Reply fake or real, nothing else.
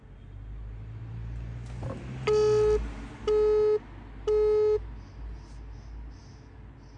real